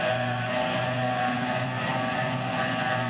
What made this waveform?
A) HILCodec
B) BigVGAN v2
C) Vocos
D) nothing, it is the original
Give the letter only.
C